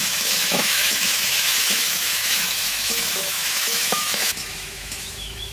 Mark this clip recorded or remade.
remade